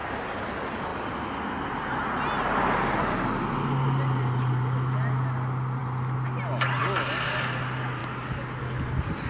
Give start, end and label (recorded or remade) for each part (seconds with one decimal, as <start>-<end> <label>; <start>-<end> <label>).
0.0-9.3 recorded